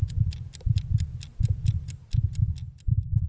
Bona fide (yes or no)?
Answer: yes